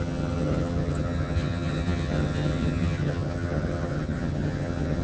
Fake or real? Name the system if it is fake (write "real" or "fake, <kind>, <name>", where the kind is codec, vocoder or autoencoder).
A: fake, vocoder, HiFi-GAN